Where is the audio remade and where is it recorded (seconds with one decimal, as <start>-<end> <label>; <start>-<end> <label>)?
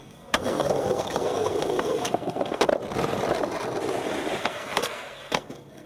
0.0-2.7 remade; 2.7-4.4 recorded; 4.4-5.9 remade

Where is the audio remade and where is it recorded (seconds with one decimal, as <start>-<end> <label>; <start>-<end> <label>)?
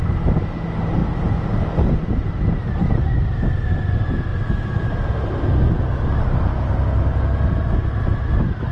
0.0-8.7 recorded